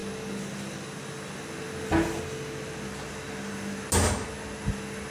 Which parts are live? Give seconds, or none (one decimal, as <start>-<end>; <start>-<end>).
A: 0.0-5.1